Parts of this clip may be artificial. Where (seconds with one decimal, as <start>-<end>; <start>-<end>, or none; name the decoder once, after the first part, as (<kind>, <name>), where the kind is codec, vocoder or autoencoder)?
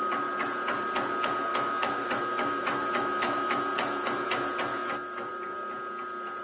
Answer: 1.5-4.3 (autoencoder, DAC-VAE); 4.7-5.3